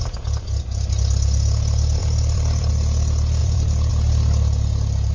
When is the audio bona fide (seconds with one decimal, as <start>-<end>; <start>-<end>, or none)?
0.0-2.0; 2.7-3.4; 3.9-5.1